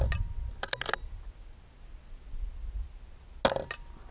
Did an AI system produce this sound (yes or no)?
no